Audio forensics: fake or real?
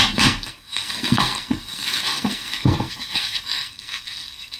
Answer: fake